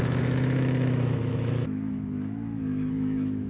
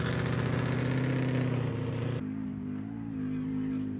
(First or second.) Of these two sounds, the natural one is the second